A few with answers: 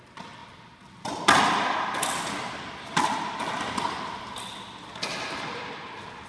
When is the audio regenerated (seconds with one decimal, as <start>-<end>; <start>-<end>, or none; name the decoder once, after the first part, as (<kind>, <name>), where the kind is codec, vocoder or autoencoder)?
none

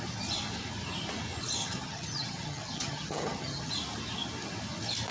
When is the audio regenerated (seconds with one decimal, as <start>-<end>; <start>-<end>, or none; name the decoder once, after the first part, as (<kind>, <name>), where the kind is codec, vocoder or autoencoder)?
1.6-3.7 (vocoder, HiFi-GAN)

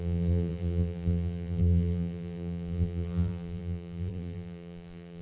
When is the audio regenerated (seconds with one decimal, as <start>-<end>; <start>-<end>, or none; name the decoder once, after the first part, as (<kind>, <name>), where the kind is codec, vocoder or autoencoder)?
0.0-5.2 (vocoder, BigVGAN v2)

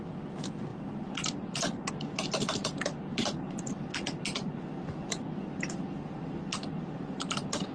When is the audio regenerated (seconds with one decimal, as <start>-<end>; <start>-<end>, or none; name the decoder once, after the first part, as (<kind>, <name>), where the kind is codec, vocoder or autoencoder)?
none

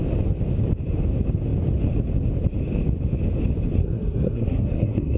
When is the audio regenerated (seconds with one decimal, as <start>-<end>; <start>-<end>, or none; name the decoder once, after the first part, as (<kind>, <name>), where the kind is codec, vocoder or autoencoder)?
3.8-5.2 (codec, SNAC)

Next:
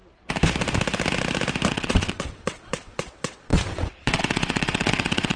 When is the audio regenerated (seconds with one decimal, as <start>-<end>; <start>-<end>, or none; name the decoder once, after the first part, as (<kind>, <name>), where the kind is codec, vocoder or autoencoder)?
1.7-5.4 (vocoder, WaveNeXt)

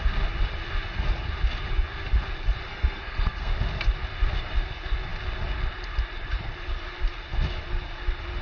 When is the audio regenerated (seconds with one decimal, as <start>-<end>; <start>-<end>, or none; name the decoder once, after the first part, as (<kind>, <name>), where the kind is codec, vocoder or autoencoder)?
2.7-3.5 (codec, SNAC)

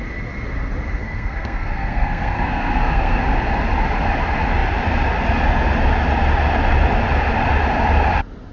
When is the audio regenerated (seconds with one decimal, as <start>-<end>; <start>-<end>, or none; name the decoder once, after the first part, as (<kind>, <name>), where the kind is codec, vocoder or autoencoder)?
1.0-3.2 (codec, SNAC)